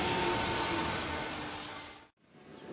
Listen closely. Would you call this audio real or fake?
real